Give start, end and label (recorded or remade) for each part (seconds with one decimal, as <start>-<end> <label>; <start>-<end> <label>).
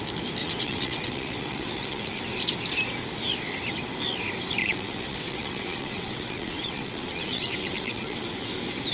0.0-0.4 recorded; 0.4-2.2 remade; 2.2-4.6 recorded; 4.6-8.5 remade; 8.5-8.9 recorded